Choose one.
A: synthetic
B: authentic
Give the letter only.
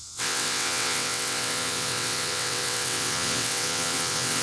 A